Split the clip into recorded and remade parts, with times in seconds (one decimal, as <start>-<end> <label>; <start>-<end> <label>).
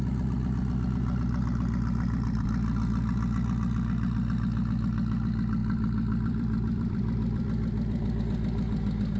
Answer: 0.0-5.6 recorded; 5.6-8.2 remade; 8.2-9.2 recorded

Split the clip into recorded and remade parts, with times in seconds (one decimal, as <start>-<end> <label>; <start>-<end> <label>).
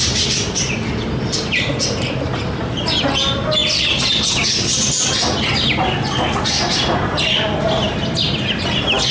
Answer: 0.0-9.1 recorded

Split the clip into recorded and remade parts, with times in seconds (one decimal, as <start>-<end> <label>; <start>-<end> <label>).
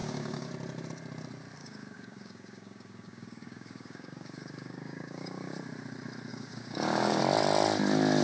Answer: 0.0-0.5 remade; 0.5-1.6 recorded; 1.6-5.5 remade; 5.5-6.3 recorded; 6.3-7.2 remade; 7.2-8.2 recorded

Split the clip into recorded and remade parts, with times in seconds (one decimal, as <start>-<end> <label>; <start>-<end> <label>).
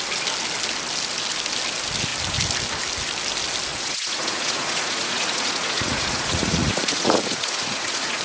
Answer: 0.0-3.7 recorded; 3.7-8.2 remade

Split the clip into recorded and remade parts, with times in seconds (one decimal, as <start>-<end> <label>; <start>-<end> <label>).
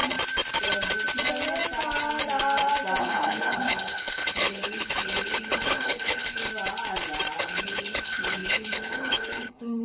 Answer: 0.0-3.0 recorded; 3.0-6.5 remade; 6.5-7.4 recorded; 7.4-9.8 remade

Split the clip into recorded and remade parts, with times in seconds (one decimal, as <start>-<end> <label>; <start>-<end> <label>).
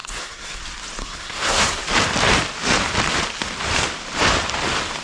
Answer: 0.0-0.6 remade; 0.6-1.0 recorded; 1.0-1.8 remade; 1.8-5.0 recorded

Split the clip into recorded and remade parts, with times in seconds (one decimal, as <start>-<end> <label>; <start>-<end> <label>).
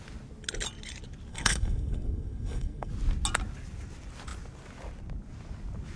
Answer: 0.0-1.3 recorded; 1.3-2.9 remade; 2.9-6.0 recorded